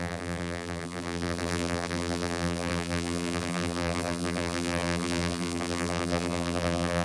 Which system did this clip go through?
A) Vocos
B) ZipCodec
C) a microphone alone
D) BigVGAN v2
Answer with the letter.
D